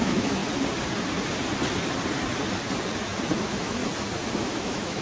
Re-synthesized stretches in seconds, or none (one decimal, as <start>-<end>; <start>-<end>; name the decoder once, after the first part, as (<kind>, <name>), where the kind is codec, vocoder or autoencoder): 0.0-0.4 (autoencoder, DAC-VAE); 3.4-3.8; 4.4-5.0